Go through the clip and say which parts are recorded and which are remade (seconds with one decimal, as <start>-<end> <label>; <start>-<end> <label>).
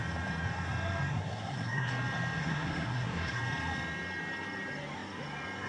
0.0-1.1 recorded; 1.1-1.9 remade; 1.9-2.4 recorded; 2.4-3.4 remade; 3.4-5.7 recorded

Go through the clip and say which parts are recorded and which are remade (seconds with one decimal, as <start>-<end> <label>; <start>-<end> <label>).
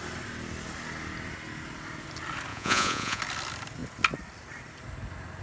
0.0-2.5 recorded; 2.5-3.2 remade; 3.2-5.4 recorded